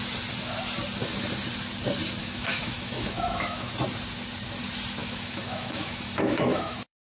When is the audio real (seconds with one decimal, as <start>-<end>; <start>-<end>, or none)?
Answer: 0.0-2.2; 3.7-5.0